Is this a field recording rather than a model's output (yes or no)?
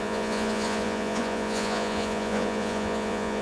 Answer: no